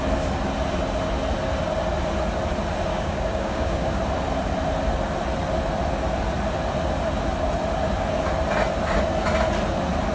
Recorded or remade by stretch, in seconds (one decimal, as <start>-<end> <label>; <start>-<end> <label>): 0.0-2.9 recorded; 2.9-4.0 remade; 4.0-10.1 recorded